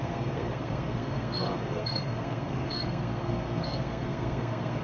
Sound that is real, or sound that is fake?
fake